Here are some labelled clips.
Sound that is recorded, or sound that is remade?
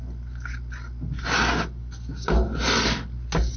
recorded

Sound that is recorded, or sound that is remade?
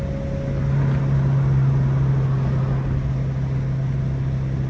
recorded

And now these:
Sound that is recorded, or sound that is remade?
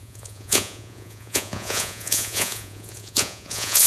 remade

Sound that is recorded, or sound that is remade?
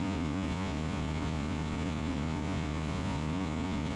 remade